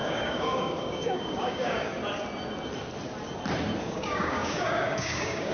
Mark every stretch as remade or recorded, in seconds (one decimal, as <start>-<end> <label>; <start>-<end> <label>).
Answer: 0.0-1.9 remade; 1.9-3.8 recorded; 3.8-5.5 remade